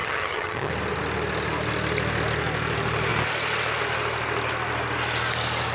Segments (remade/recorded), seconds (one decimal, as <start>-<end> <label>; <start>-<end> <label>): 0.0-0.7 remade; 0.7-5.7 recorded